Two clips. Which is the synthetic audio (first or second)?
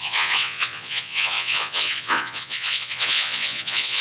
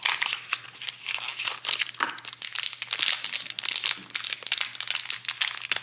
first